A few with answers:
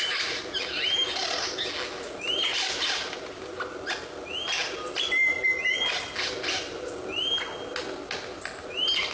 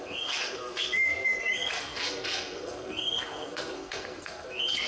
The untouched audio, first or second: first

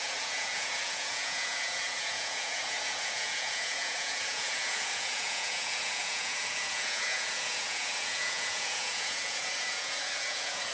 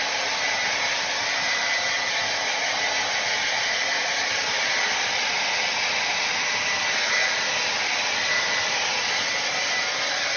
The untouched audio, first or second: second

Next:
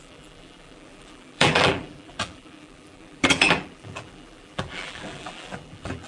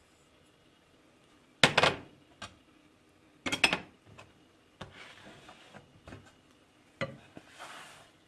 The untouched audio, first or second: second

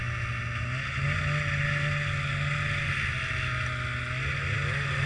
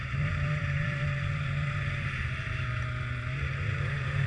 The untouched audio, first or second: first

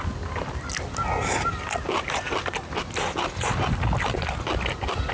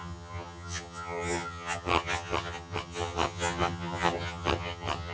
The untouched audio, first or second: first